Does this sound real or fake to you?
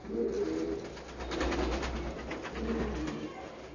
real